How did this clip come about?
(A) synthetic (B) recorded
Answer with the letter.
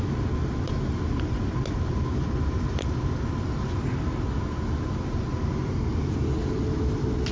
B